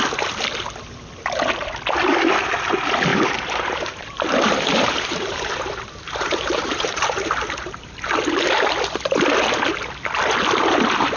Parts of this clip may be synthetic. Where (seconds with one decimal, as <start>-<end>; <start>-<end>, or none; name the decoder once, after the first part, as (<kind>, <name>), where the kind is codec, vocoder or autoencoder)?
3.1-8.1 (vocoder, BigVGAN v2)